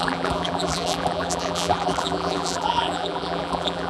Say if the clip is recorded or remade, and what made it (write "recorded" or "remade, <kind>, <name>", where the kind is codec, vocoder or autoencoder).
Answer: remade, vocoder, BigVGAN v2